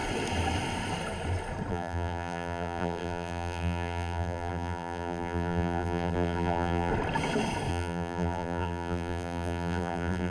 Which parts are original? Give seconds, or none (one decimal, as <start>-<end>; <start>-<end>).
0.0-1.7; 6.9-7.7